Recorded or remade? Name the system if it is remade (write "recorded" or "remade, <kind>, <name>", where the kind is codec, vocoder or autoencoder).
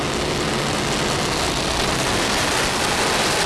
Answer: recorded